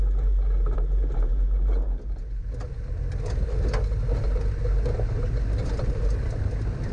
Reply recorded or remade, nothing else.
recorded